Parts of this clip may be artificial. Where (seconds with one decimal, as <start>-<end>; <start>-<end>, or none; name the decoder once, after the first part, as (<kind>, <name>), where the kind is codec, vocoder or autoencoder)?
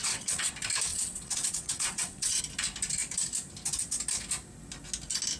0.0-0.5 (vocoder, WaveNeXt); 0.9-2.4